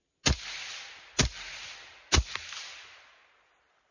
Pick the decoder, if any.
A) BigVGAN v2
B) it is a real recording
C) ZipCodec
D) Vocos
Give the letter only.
B